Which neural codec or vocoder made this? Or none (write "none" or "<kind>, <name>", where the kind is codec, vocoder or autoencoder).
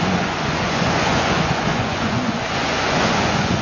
vocoder, Vocos